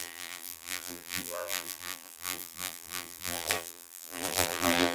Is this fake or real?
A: fake